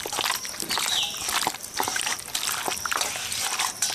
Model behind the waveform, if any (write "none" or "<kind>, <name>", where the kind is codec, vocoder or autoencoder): none